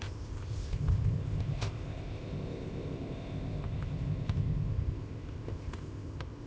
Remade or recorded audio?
remade